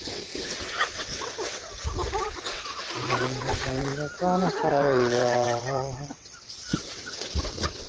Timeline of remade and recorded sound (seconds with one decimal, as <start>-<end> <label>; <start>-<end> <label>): 0.0-1.7 remade; 1.7-2.2 recorded; 2.2-3.9 remade; 3.9-4.5 recorded; 4.5-7.9 remade